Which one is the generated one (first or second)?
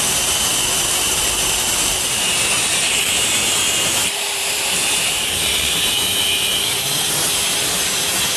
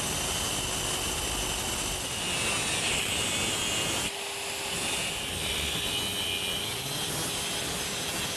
first